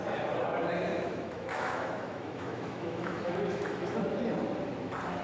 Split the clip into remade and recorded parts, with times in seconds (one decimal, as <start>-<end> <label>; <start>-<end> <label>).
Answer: 0.0-0.9 recorded; 0.9-4.0 remade; 4.0-5.2 recorded